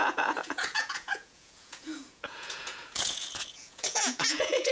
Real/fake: fake